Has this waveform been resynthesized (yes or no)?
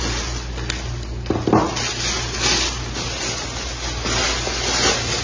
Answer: no